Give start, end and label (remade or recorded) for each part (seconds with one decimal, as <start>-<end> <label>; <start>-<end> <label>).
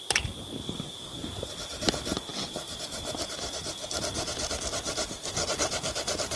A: 0.0-6.4 recorded